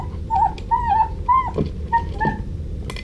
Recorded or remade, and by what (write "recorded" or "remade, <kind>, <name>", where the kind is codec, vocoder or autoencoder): recorded